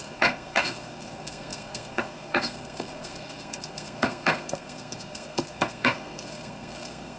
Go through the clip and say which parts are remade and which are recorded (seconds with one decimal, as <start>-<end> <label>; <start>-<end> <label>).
0.0-7.2 remade